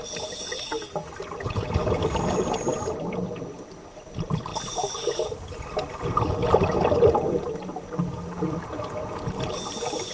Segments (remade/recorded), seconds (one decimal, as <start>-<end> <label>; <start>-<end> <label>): 0.0-10.1 recorded

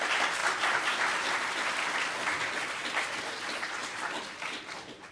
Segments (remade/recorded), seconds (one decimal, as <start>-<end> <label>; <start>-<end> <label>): 0.0-0.4 recorded; 0.4-1.9 remade; 1.9-3.8 recorded; 3.8-4.6 remade; 4.6-5.1 recorded

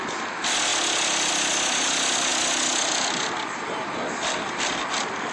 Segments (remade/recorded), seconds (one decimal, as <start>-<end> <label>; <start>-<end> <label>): 0.0-5.3 recorded

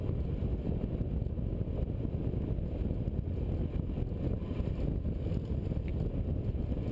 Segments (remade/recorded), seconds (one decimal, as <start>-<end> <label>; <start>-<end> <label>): 0.0-6.9 recorded